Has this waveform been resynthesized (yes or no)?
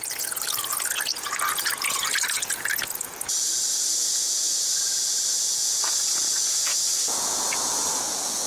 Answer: yes